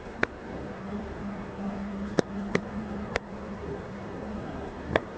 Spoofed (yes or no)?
yes